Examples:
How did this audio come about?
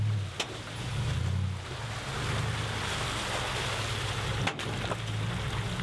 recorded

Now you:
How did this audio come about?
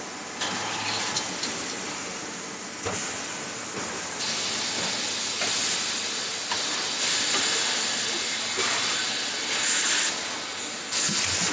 recorded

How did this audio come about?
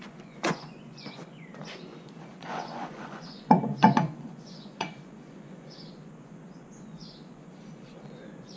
remade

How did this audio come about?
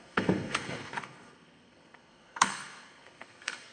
remade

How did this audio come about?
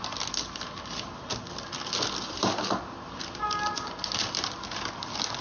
recorded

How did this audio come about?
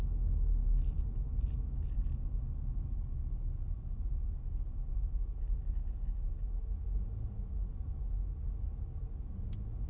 recorded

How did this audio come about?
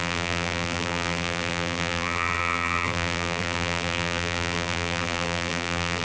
remade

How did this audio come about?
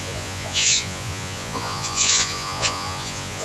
remade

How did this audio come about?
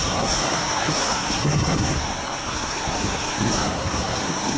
remade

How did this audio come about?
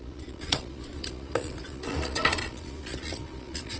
remade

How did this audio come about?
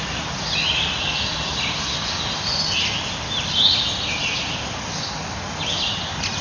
recorded